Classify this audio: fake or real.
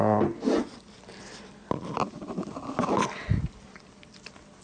real